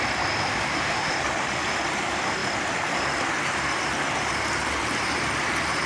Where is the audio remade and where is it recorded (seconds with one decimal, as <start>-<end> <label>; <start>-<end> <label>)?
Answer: 0.0-0.4 recorded; 0.4-1.1 remade; 1.1-5.9 recorded